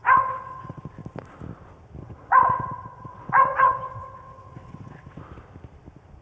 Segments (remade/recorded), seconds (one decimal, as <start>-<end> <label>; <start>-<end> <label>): 0.0-0.8 remade; 0.8-2.0 recorded; 2.0-5.2 remade; 5.2-6.2 recorded